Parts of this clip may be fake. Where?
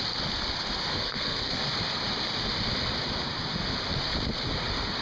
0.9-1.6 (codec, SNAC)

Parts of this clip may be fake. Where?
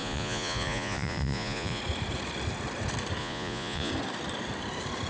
0.0-1.8 (vocoder, Vocos); 3.2-3.9